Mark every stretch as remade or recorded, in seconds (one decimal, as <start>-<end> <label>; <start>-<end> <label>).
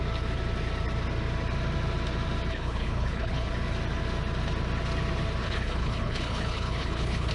0.0-2.5 recorded; 2.5-3.5 remade; 3.5-5.4 recorded; 5.4-7.3 remade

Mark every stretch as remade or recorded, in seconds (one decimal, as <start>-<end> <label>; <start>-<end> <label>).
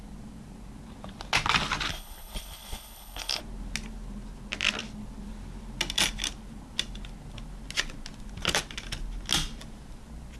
0.0-1.9 recorded; 1.9-3.4 remade; 3.4-10.4 recorded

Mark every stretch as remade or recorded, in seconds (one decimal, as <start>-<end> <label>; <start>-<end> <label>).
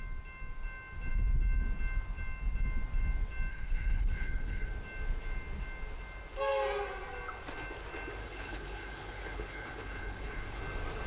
0.0-3.5 recorded; 3.5-4.7 remade; 4.7-8.2 recorded; 8.2-10.6 remade; 10.6-11.1 recorded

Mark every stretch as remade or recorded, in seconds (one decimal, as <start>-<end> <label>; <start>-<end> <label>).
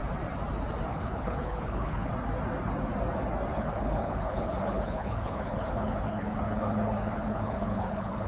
0.0-0.9 recorded; 0.9-2.1 remade; 2.1-3.5 recorded; 3.5-8.3 remade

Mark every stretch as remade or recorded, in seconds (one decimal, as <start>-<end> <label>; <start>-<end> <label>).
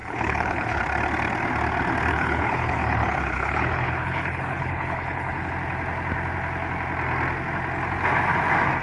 0.0-0.8 remade; 0.8-2.1 recorded; 2.1-5.5 remade; 5.5-8.8 recorded